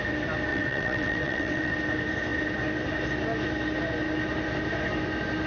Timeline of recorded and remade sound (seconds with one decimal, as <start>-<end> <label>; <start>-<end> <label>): 0.0-0.5 recorded; 0.5-1.7 remade; 1.7-5.5 recorded